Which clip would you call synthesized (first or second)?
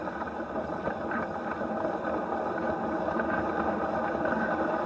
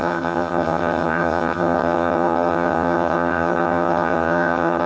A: second